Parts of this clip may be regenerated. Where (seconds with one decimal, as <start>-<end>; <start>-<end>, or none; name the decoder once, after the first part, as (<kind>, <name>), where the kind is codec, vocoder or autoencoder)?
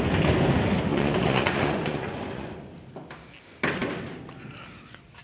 0.9-2.7 (vocoder, Vocos)